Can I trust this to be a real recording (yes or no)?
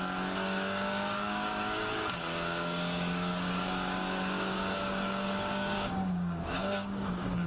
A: no